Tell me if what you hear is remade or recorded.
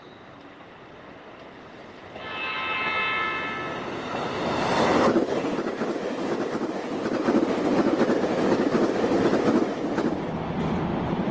recorded